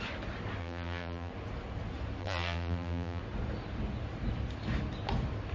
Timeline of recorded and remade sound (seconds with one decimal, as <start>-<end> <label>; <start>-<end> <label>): 0.0-0.6 recorded; 0.6-1.3 remade; 1.3-2.2 recorded; 2.2-3.2 remade; 3.2-5.5 recorded